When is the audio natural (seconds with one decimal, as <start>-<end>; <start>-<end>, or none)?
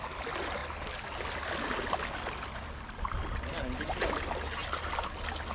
0.0-5.5